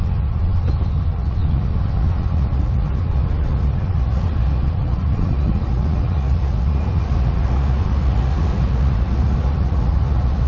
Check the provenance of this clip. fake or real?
fake